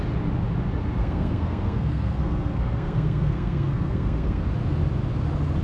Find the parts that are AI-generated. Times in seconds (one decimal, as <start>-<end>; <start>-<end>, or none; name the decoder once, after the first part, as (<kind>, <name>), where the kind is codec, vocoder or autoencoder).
1.0-4.4 (codec, SNAC)